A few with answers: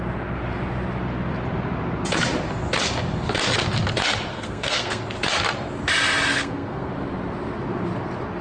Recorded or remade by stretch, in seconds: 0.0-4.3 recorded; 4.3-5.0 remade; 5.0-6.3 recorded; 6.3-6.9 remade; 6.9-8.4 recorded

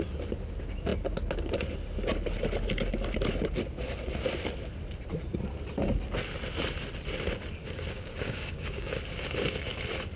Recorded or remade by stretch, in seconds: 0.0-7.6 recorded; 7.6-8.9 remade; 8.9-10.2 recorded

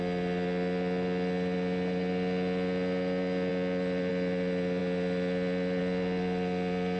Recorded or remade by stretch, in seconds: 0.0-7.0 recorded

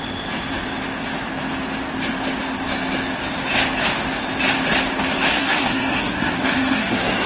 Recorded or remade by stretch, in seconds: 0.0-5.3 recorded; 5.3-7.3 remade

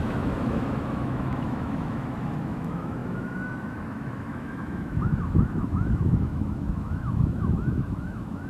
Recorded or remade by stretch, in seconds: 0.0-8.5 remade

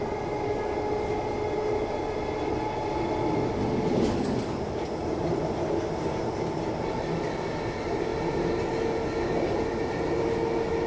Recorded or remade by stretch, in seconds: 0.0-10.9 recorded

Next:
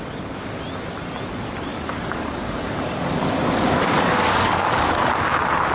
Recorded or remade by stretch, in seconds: 0.0-1.7 recorded; 1.7-4.9 remade; 4.9-5.7 recorded

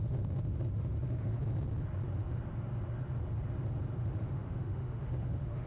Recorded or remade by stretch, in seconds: 0.0-1.3 remade; 1.3-4.0 recorded; 4.0-5.7 remade